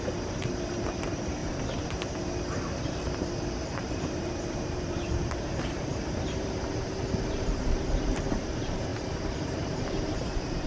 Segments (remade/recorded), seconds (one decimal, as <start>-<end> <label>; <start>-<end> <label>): 0.0-10.7 remade